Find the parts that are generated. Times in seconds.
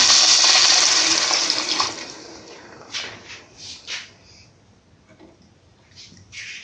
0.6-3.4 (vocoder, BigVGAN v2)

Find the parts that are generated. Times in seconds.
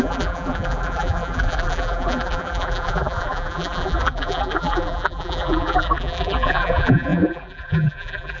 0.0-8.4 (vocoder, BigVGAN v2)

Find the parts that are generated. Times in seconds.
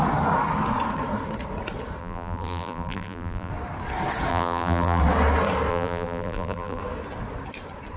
2.0-3.5 (vocoder, BigVGAN v2); 4.3-5.0; 5.7-6.8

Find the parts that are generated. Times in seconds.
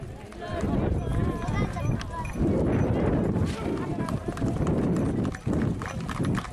3.9-5.3 (vocoder, BigVGAN v2)